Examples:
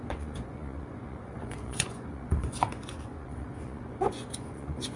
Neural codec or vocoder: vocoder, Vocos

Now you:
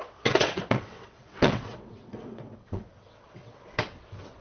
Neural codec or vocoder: vocoder, WaveNeXt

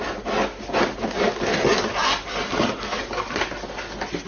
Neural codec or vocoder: none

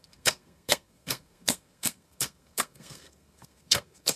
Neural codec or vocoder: codec, SNAC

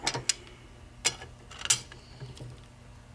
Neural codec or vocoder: none